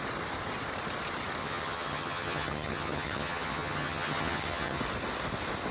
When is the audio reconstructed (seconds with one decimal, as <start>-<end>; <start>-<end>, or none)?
1.4-4.8